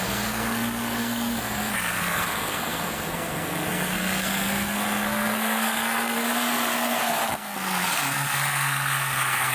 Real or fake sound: fake